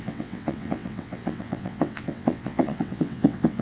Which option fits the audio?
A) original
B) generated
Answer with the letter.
B